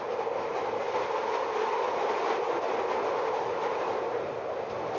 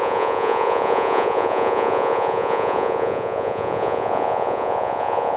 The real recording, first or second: first